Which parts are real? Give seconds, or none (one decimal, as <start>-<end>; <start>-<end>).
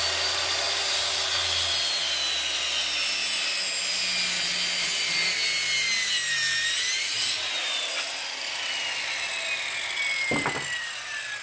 0.0-11.4